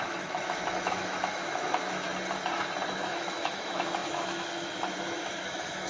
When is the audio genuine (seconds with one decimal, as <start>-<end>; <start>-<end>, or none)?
2.1-2.9